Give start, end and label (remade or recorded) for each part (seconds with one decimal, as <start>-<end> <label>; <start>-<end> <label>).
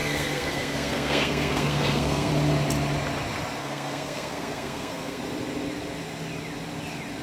0.0-2.3 remade; 2.3-3.6 recorded; 3.6-5.2 remade; 5.2-7.2 recorded